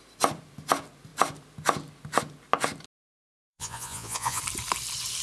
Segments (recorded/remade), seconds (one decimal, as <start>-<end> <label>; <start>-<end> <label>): 0.0-3.3 recorded; 3.3-4.4 remade; 4.4-5.2 recorded